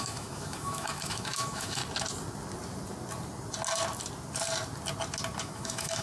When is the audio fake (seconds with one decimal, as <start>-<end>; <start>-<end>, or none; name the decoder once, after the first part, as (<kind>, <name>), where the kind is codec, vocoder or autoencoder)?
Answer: 0.0-1.8 (autoencoder, DAC-VAE); 5.4-6.0